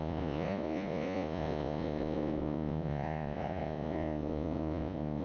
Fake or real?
fake